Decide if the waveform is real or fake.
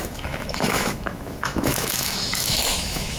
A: fake